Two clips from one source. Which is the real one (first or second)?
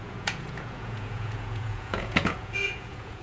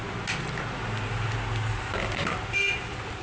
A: second